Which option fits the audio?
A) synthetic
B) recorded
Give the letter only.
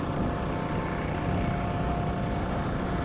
B